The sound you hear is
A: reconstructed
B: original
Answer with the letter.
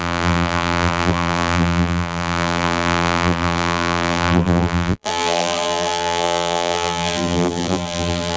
A